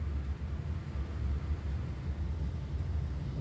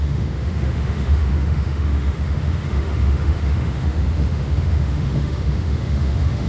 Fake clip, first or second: second